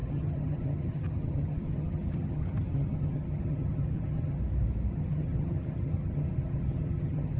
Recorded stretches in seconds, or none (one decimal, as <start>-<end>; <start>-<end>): 4.4-4.9